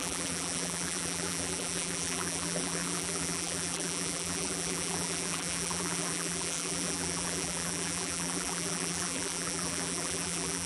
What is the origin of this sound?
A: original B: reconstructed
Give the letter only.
B